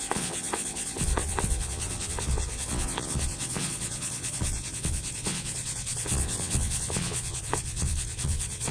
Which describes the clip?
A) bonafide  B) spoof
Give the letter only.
B